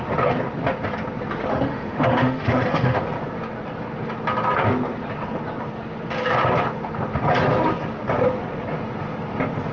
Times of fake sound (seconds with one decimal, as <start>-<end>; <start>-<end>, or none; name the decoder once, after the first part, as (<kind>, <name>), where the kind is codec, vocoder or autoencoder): 1.5-3.0 (autoencoder, DAC-VAE)